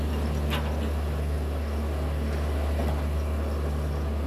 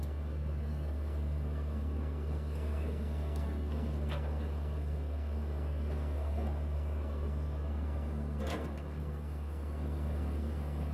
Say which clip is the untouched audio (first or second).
first